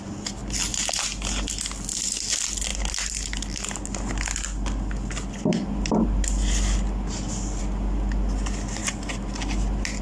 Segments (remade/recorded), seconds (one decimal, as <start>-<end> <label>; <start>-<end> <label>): 0.0-10.0 recorded